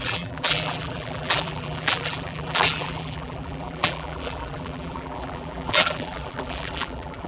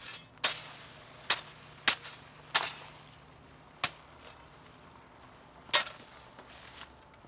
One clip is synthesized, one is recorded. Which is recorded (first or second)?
second